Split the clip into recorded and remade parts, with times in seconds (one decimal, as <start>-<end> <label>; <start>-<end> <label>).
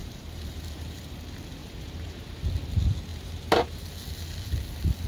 0.0-1.0 remade; 1.0-1.6 recorded; 1.6-2.4 remade; 2.4-3.1 recorded; 3.1-3.8 remade; 3.8-5.1 recorded